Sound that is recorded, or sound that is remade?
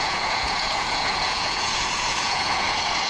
remade